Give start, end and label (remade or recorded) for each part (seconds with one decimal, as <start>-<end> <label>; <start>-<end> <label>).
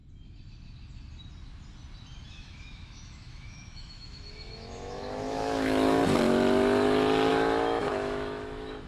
0.0-2.3 recorded; 2.3-6.0 remade; 6.0-7.3 recorded; 7.3-8.9 remade